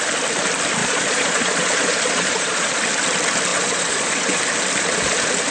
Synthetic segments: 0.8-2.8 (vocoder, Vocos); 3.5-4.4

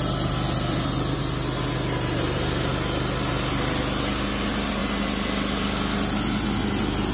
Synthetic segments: none

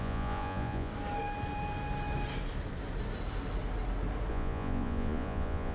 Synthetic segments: 0.0-0.9 (vocoder, Vocos); 4.3-5.7

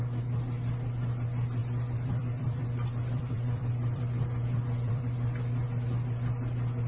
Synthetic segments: 1.6-5.4 (vocoder, BigVGAN v2)